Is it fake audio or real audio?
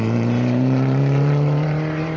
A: fake